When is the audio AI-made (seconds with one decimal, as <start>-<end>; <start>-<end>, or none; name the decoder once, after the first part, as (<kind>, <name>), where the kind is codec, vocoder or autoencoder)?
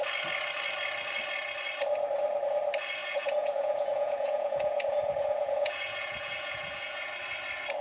3.0-7.1 (vocoder, Vocos)